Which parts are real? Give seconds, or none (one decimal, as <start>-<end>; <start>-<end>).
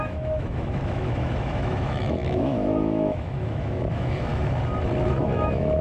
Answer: 4.3-5.1